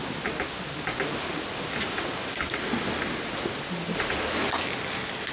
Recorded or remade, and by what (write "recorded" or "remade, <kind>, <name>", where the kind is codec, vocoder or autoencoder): recorded